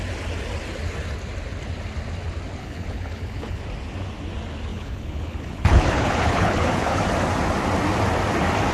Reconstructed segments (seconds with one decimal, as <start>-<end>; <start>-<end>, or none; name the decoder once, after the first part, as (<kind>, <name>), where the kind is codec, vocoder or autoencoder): 2.6-3.6 (codec, HILCodec); 4.7-7.0